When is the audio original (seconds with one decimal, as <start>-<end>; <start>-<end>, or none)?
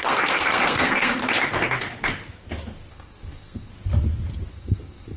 1.2-2.9; 3.7-4.5